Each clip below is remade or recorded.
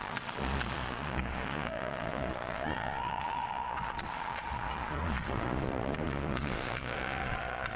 remade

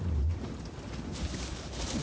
recorded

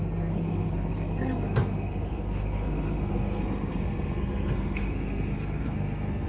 remade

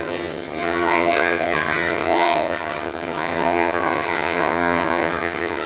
remade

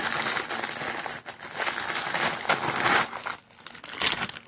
recorded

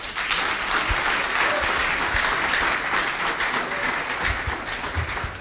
recorded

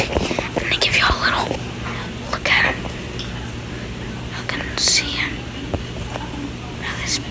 recorded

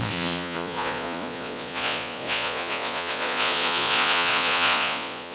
remade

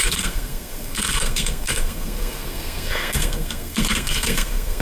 remade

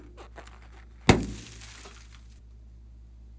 recorded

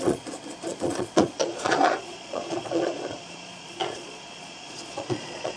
remade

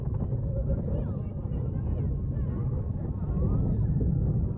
recorded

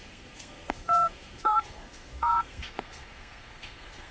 remade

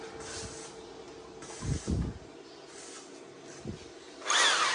recorded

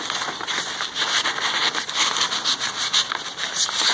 recorded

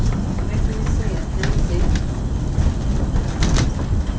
recorded